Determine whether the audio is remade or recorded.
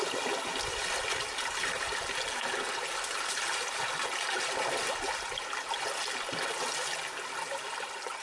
recorded